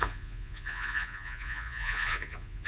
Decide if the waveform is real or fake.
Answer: fake